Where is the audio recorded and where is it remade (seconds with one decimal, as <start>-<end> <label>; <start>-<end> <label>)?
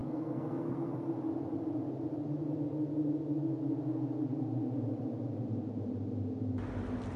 0.0-1.1 remade; 1.1-7.2 recorded